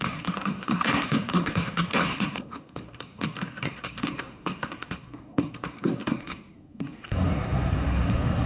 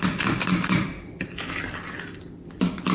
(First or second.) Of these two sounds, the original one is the second